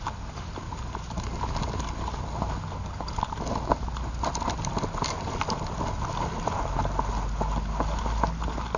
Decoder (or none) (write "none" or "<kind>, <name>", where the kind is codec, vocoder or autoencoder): none